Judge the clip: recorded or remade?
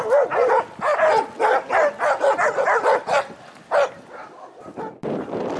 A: recorded